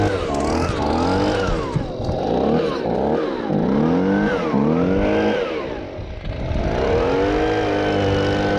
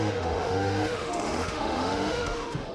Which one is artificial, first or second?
second